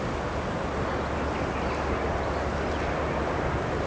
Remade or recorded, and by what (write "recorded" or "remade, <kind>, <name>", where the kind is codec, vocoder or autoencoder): recorded